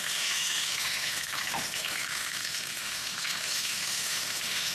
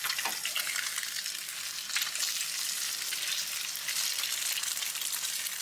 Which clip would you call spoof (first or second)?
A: first